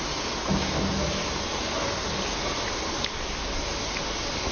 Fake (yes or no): no